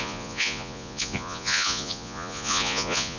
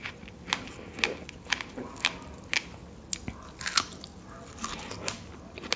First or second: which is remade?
first